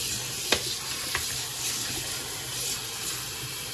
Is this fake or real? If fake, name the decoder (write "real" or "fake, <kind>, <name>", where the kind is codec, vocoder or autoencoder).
fake, vocoder, BigVGAN v2